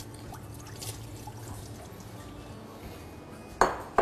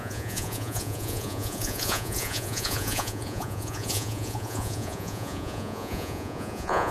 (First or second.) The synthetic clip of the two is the second